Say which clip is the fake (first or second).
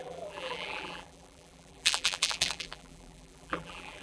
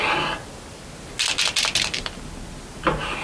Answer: first